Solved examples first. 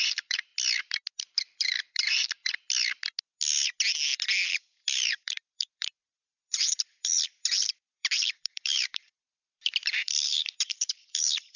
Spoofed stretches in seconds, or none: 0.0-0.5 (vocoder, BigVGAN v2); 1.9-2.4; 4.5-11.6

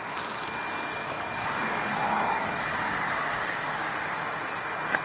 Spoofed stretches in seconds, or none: 0.9-3.9 (codec, DAC)